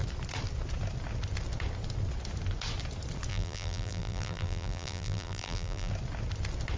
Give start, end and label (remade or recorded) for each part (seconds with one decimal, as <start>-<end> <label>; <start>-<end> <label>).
0.0-3.3 recorded; 3.3-5.9 remade; 5.9-6.8 recorded